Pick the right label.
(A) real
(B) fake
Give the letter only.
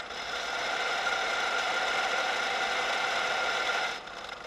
A